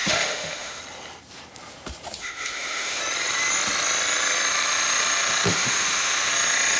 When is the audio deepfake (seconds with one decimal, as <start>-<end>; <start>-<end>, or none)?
0.0-0.8; 2.2-3.0; 5.5-6.3

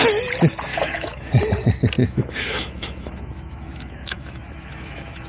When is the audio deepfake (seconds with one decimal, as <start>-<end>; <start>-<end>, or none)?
0.7-1.3; 2.0-5.3

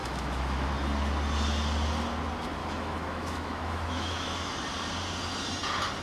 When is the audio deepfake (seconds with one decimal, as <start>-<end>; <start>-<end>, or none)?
0.0-0.7; 2.6-4.5

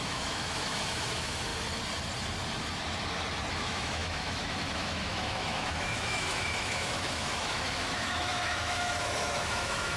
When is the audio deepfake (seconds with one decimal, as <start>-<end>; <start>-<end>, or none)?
0.0-1.5; 3.5-10.0

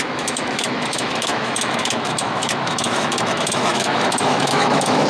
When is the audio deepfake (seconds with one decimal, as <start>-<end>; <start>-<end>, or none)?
0.0-5.1

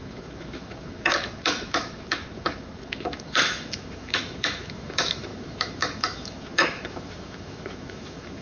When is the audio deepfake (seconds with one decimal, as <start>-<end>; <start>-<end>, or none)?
0.0-8.4

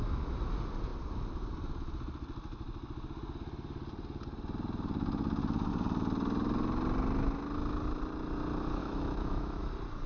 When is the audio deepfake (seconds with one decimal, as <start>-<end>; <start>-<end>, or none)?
8.8-9.6

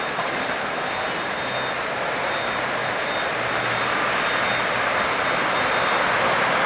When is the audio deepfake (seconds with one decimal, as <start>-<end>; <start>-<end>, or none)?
none